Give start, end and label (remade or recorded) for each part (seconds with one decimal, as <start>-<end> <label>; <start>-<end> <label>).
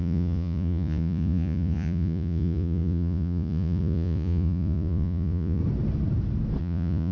0.0-5.6 remade; 5.6-6.6 recorded; 6.6-7.1 remade